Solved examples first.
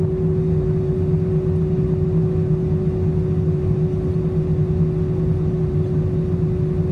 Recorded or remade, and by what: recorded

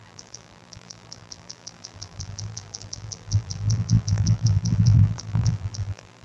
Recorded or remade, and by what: remade, vocoder, BigVGAN v2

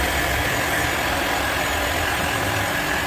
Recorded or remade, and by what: remade, vocoder, BigVGAN v2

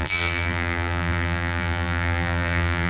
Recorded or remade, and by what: remade, vocoder, BigVGAN v2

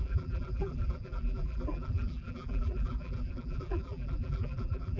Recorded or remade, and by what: remade, vocoder, BigVGAN v2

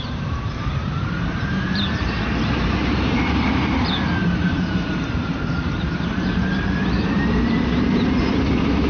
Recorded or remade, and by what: remade, vocoder, BigVGAN v2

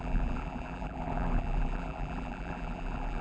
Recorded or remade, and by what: remade, vocoder, BigVGAN v2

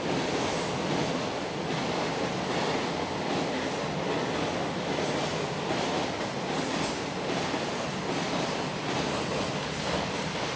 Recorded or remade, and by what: recorded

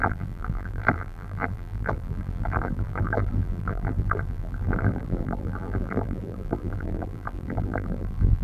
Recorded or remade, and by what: remade, vocoder, BigVGAN v2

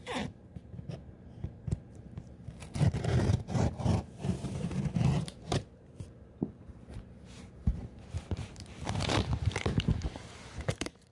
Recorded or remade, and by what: remade, vocoder, BigVGAN v2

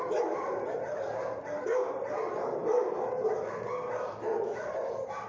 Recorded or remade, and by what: recorded